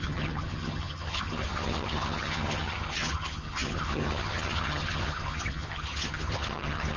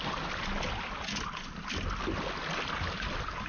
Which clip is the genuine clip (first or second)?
second